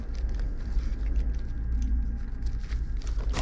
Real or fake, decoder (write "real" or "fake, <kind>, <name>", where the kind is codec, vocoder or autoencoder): real